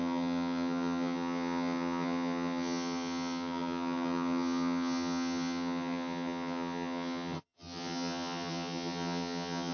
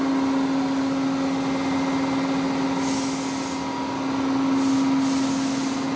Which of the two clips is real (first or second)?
second